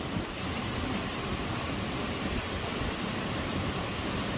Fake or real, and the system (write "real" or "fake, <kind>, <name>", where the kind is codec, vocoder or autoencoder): fake, vocoder, BigVGAN v2